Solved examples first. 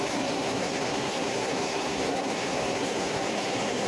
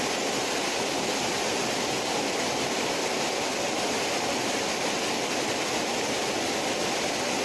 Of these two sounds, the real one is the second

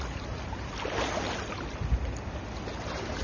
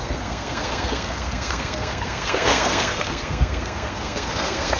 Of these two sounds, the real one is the first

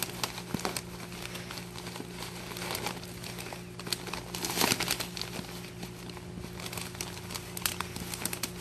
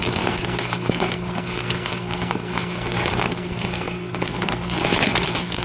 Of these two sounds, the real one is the first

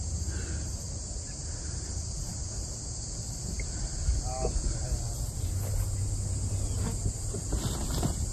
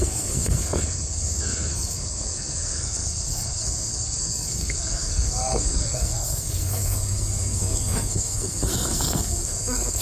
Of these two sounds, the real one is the first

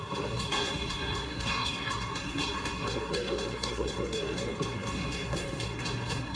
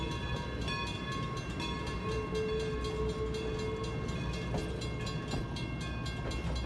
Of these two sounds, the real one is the second